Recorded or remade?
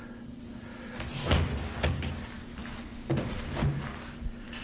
recorded